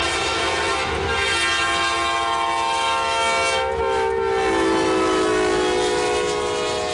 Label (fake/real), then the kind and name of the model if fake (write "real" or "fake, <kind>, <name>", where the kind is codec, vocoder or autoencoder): real